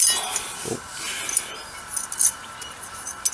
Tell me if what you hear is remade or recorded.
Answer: recorded